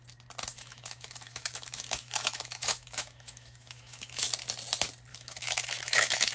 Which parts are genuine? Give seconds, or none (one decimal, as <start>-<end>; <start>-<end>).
0.0-0.5; 4.3-5.1